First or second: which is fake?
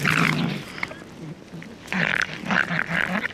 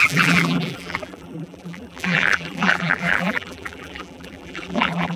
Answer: second